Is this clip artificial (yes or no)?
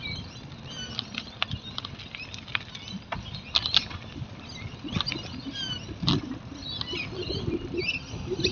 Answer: no